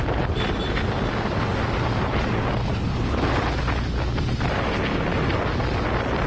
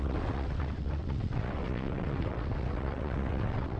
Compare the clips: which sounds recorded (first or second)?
first